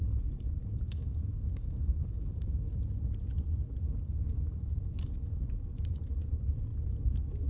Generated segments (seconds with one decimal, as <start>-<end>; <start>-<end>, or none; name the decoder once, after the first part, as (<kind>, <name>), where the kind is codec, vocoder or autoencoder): 0.6-2.7 (codec, DAC)